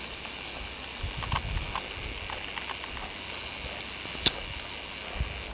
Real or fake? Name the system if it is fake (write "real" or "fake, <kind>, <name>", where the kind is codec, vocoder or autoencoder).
real